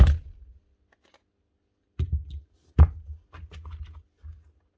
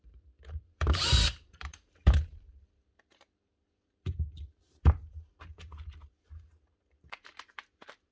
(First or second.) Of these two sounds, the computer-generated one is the second